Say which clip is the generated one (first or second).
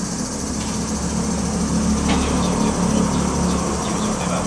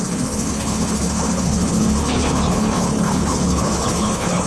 second